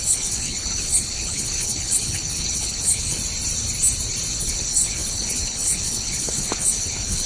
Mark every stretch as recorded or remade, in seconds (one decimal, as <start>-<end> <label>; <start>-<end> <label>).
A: 0.0-3.2 remade; 3.2-4.4 recorded; 4.4-7.3 remade